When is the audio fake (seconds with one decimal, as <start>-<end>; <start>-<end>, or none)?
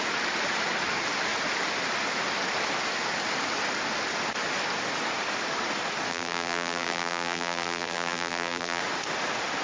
6.1-8.8